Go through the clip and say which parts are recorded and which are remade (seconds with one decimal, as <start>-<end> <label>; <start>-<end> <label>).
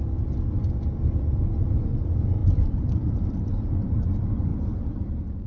0.0-2.4 recorded; 2.4-3.3 remade; 3.3-4.5 recorded; 4.5-5.5 remade